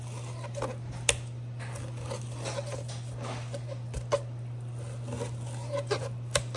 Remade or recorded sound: recorded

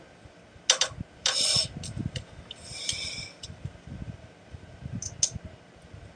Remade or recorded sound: recorded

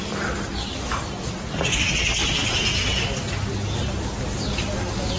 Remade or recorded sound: recorded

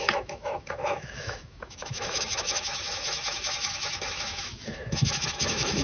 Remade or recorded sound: remade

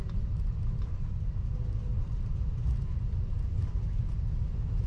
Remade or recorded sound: recorded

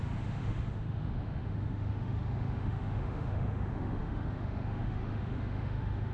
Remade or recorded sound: remade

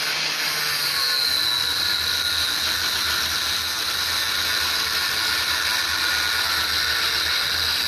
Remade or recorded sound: recorded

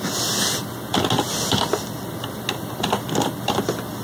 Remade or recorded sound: recorded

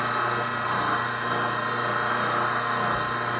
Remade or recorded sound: recorded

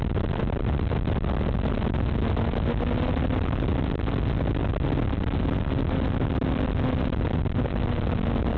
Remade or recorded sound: recorded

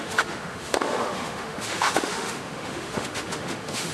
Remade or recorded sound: remade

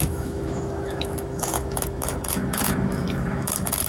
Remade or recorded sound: remade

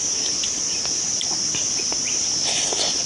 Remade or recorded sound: recorded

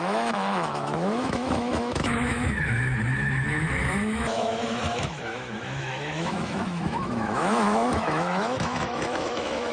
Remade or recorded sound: remade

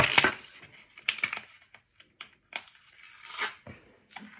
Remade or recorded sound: recorded